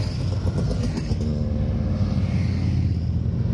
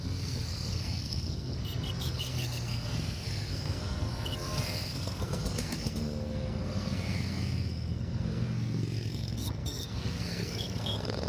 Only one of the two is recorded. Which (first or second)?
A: first